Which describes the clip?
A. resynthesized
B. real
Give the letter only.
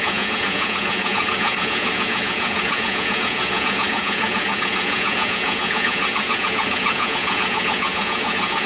A